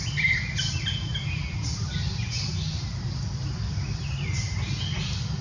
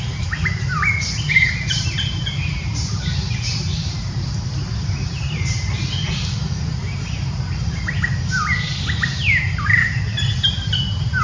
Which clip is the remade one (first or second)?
second